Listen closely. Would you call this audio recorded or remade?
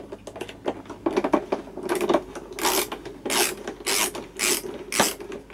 recorded